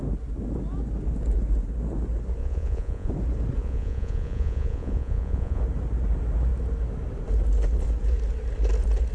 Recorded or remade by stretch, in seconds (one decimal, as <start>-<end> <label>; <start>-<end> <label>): 0.0-2.4 recorded; 2.4-3.1 remade; 3.1-3.6 recorded; 3.6-5.6 remade; 5.6-9.1 recorded